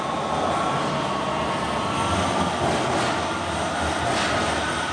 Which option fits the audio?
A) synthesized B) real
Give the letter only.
B